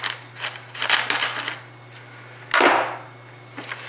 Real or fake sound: real